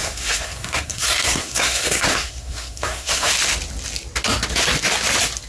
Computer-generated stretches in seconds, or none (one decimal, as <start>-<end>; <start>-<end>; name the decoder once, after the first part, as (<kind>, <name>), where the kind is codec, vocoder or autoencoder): 0.0-3.3 (codec, SNAC)